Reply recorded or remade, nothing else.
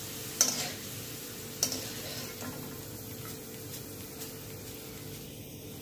recorded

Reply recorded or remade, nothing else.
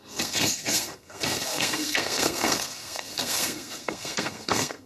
remade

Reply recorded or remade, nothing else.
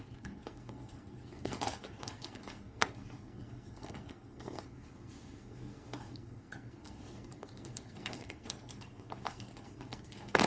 remade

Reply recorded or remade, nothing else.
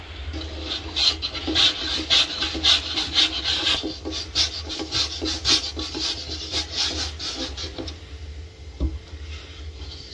recorded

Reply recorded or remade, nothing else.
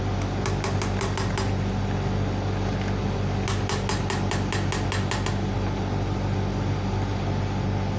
recorded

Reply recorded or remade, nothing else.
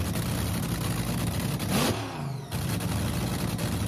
recorded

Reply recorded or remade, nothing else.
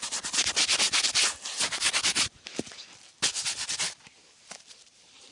recorded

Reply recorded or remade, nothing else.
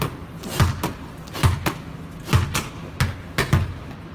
recorded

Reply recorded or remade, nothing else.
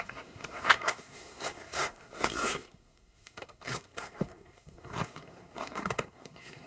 remade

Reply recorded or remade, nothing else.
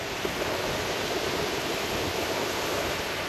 recorded